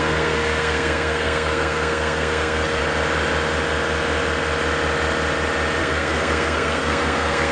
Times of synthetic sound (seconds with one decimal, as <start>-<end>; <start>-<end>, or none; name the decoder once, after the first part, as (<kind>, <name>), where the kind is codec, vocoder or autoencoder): 0.0-2.8 (codec, SNAC); 5.8-7.5